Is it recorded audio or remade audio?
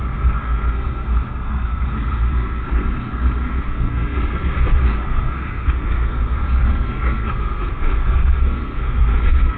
remade